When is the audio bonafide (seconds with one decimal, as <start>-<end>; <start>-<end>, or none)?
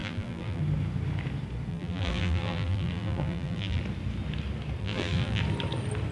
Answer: 0.6-1.7; 3.8-4.8; 5.4-6.1